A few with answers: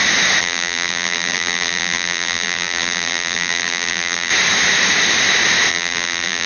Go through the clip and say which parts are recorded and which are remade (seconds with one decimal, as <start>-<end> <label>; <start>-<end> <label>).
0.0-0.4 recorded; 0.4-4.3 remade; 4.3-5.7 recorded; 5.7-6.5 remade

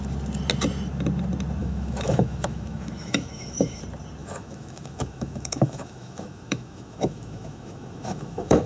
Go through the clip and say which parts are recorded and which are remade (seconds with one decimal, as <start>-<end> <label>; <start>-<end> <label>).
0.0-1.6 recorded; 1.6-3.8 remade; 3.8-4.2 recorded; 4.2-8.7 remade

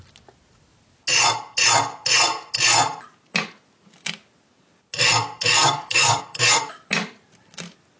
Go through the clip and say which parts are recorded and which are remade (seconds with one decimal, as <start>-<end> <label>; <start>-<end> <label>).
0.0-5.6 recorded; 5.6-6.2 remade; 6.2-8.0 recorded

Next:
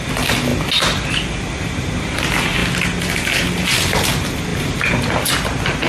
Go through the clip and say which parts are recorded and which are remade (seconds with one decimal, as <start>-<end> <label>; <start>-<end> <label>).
0.0-4.5 recorded; 4.5-5.3 remade; 5.3-5.9 recorded

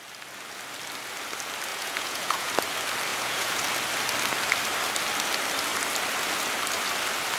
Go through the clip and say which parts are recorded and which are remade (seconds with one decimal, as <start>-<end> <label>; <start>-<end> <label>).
0.0-1.7 recorded; 1.7-2.5 remade; 2.5-3.1 recorded; 3.1-3.6 remade; 3.6-7.4 recorded

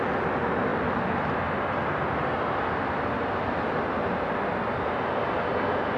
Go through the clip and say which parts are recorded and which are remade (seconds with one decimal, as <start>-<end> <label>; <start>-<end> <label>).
0.0-6.0 recorded

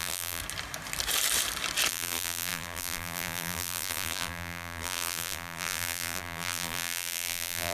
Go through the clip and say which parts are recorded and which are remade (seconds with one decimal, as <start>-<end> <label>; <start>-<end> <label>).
0.0-0.4 remade; 0.4-1.9 recorded; 1.9-7.7 remade